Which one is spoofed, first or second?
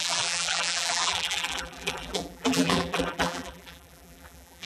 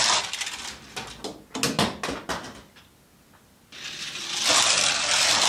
first